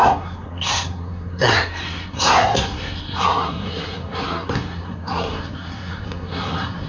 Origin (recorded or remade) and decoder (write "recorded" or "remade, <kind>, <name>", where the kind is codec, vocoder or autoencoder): remade, codec, SNAC